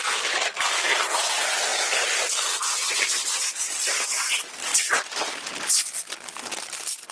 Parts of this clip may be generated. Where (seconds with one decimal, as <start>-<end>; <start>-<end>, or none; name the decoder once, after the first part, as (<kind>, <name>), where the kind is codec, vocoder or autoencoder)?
none